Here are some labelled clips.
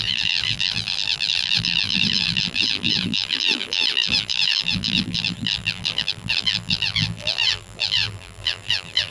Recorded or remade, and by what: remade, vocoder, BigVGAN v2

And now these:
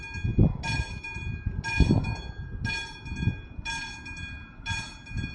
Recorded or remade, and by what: recorded